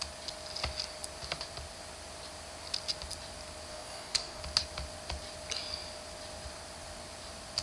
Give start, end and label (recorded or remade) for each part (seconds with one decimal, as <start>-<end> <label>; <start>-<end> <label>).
0.0-3.7 recorded; 3.7-4.4 remade; 4.4-7.6 recorded